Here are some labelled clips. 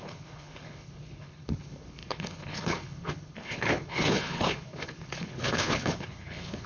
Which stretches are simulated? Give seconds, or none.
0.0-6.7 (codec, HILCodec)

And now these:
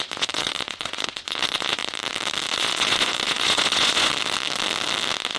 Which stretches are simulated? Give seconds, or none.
0.0-1.8 (vocoder, Vocos); 2.5-4.1

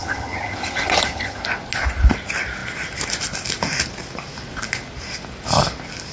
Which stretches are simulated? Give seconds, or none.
0.0-1.4 (vocoder, HiFi-GAN)

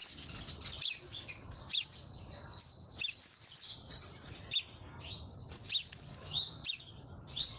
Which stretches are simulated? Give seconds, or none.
4.6-5.3 (codec, DAC); 6.1-6.6

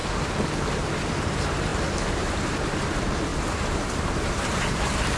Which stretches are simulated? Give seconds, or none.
0.7-1.7 (vocoder, BigVGAN v2); 2.2-5.2